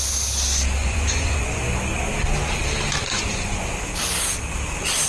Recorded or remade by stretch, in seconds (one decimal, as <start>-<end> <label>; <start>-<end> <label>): 0.0-0.8 recorded; 0.8-1.6 remade; 1.6-3.0 recorded; 3.0-3.7 remade; 3.7-5.1 recorded